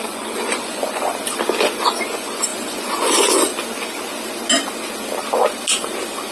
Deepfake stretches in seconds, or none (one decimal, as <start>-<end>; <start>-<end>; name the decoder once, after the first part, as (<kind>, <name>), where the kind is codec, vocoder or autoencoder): 0.0-1.1 (vocoder, Vocos); 1.8-3.5